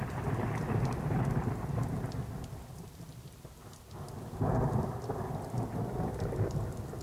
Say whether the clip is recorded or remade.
remade